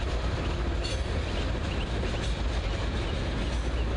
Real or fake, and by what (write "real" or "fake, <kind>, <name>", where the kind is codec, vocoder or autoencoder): real